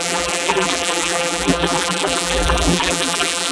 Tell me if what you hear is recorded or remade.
remade